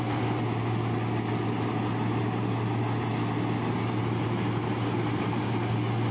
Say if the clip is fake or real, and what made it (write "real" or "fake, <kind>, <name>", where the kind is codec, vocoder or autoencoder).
real